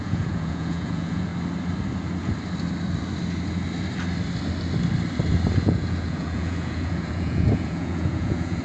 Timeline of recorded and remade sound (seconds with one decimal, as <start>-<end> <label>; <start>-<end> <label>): 0.0-1.3 remade; 1.3-5.6 recorded; 5.6-8.6 remade